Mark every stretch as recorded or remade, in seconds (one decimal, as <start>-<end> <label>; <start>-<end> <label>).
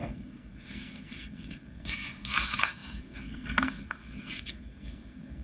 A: 0.0-5.4 remade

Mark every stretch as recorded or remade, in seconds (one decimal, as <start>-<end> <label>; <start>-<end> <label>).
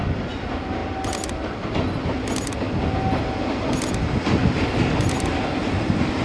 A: 0.0-6.2 recorded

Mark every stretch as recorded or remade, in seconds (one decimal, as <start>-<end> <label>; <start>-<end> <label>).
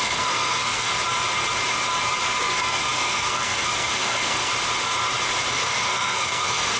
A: 0.0-0.9 remade; 0.9-2.4 recorded; 2.4-4.5 remade; 4.5-5.5 recorded; 5.5-6.8 remade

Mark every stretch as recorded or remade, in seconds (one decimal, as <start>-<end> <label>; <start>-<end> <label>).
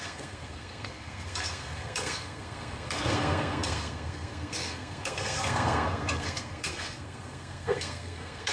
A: 0.0-8.5 remade